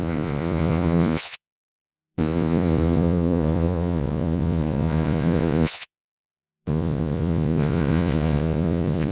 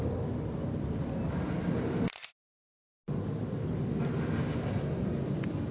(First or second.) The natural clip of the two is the second